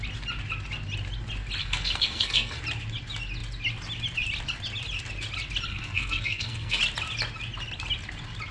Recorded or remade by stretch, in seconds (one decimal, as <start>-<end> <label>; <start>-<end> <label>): 0.0-1.6 recorded; 1.6-2.6 remade; 2.6-5.7 recorded; 5.7-6.8 remade; 6.8-8.5 recorded